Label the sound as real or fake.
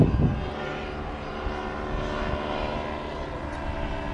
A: real